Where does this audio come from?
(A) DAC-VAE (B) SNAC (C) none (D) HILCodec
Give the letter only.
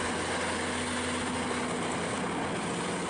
C